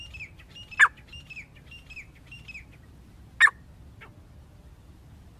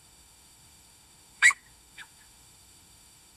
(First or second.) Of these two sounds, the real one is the first